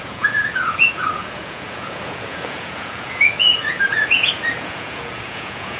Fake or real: fake